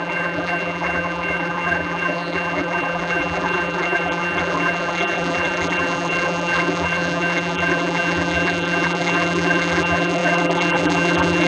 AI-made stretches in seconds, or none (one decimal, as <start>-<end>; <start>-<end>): 0.0-11.5